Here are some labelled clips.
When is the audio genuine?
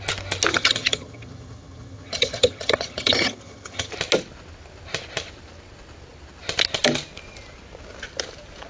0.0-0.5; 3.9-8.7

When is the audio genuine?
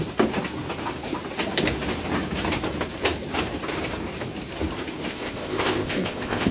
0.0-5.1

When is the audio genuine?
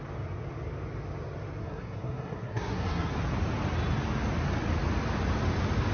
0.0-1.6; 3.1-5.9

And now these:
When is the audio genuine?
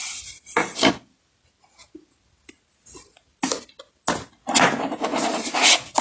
0.9-6.0